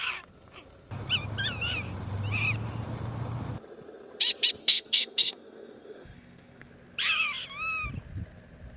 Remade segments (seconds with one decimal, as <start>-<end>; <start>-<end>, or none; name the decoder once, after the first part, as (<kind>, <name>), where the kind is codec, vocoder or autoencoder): 4.6-6.7 (codec, SNAC)